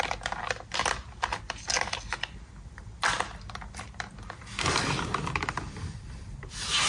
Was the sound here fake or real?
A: real